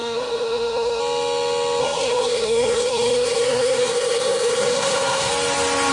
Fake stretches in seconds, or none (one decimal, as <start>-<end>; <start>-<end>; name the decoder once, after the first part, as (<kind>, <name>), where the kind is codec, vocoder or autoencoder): 0.0-1.0 (codec, SNAC); 1.8-5.3